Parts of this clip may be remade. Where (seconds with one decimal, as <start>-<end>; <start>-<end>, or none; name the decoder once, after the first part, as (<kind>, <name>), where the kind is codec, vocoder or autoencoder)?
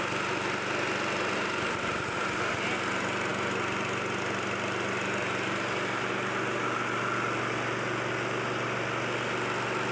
none